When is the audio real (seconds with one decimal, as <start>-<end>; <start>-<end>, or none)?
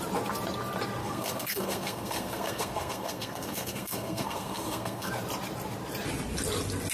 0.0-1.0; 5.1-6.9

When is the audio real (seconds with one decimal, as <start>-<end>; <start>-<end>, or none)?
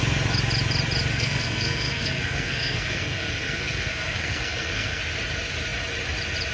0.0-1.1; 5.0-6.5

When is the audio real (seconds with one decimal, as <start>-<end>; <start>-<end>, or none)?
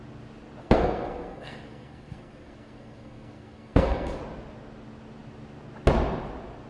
0.0-0.6; 4.2-6.7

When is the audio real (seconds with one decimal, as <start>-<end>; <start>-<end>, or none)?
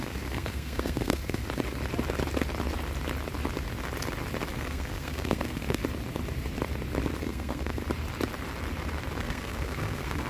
1.4-4.5; 5.8-7.2; 7.8-9.2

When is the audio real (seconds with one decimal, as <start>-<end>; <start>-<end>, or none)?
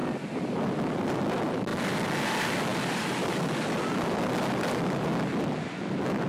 0.0-6.3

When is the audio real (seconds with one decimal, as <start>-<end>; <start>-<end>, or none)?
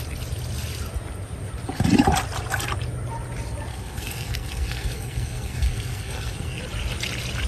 0.0-3.7; 6.6-7.5